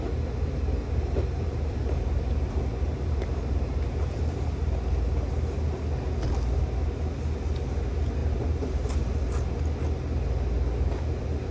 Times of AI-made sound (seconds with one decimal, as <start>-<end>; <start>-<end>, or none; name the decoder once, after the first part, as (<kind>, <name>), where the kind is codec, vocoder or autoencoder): 0.8-4.5 (vocoder, BigVGAN v2); 8.2-8.9